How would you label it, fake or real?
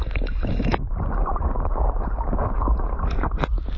real